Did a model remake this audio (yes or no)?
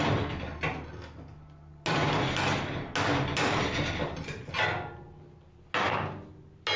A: no